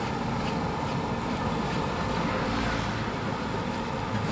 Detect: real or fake real